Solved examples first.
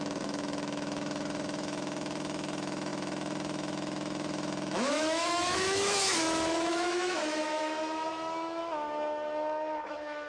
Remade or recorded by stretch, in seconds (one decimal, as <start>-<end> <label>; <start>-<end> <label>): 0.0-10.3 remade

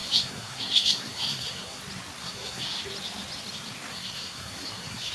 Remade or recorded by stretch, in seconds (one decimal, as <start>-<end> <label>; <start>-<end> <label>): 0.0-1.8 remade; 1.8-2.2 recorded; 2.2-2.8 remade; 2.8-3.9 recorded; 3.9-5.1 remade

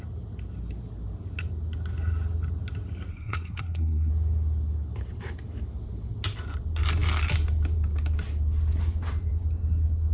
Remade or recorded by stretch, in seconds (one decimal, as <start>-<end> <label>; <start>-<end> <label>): 0.0-3.1 recorded; 3.1-4.1 remade; 4.1-10.1 recorded

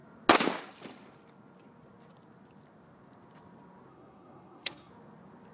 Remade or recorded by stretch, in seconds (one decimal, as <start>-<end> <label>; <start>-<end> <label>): 0.0-3.9 recorded; 3.9-4.9 remade; 4.9-5.5 recorded